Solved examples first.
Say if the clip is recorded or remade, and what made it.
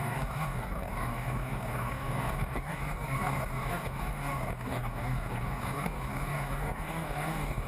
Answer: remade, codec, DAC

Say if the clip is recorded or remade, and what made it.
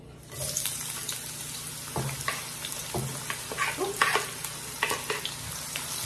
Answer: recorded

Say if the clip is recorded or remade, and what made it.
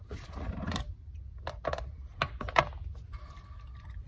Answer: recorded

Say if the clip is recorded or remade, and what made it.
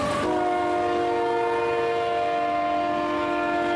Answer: recorded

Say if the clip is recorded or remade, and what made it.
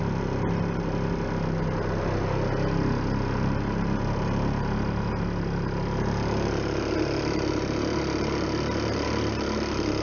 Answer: recorded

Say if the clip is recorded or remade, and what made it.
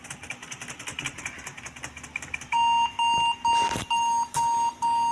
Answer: recorded